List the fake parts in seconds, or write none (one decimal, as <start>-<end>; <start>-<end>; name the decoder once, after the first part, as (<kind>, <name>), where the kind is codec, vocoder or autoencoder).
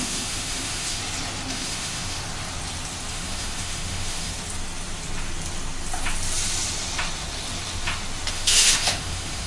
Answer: 0.0-1.0 (autoencoder, DAC-VAE); 1.5-2.2; 3.1-4.3; 8.3-9.5